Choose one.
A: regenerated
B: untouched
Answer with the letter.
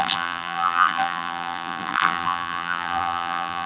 A